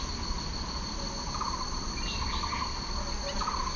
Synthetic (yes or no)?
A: no